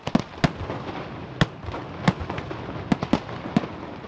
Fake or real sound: real